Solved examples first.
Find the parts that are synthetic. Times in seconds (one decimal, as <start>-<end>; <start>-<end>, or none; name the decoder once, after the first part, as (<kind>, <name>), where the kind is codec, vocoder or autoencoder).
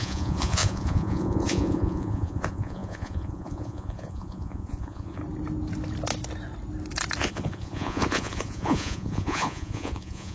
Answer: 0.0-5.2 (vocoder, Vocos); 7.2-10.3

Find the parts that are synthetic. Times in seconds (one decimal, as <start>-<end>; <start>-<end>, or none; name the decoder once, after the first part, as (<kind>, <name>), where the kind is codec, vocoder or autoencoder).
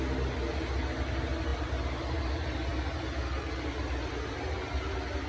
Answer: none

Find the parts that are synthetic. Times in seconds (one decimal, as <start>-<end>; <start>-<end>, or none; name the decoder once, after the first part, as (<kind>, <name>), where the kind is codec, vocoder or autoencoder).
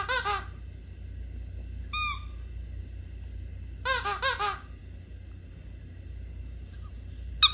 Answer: none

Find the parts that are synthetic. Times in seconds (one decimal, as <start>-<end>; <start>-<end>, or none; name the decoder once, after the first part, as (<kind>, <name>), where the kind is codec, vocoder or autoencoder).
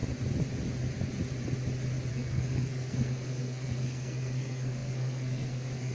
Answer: 2.1-5.9 (codec, SNAC)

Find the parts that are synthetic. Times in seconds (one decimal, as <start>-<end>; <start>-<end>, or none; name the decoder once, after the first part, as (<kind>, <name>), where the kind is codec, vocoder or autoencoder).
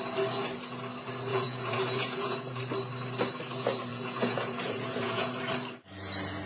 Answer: 1.3-2.6 (vocoder, Vocos); 3.9-5.4